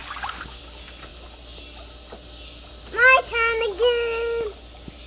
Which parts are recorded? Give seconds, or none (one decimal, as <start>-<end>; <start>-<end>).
0.6-5.1